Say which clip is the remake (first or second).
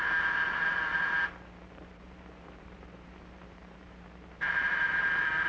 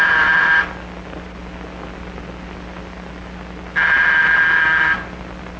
first